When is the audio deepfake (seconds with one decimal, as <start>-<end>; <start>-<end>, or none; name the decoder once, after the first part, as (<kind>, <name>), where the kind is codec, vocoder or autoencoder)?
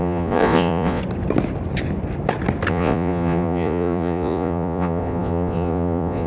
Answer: 0.0-1.0 (vocoder, Vocos); 2.7-6.3